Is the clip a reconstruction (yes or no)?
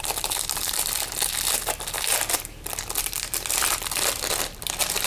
yes